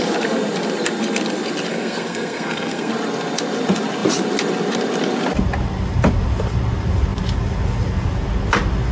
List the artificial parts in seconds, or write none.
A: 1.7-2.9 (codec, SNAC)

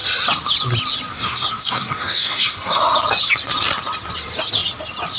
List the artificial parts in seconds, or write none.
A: 1.1-2.8 (codec, SNAC)

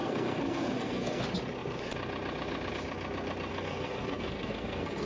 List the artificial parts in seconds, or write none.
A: 0.0-1.2 (codec, SNAC); 3.5-5.1